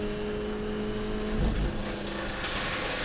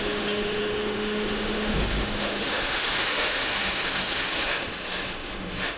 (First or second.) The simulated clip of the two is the second